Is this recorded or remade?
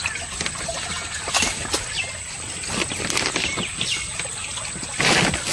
recorded